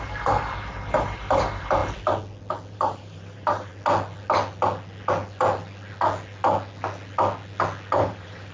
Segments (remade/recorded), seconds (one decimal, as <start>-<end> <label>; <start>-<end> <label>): 0.0-1.8 remade; 1.8-2.7 recorded; 2.7-3.7 remade; 3.7-8.0 recorded; 8.0-8.5 remade